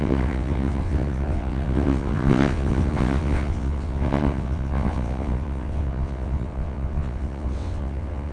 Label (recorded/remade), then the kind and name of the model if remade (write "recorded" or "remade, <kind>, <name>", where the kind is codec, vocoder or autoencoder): remade, vocoder, WaveNeXt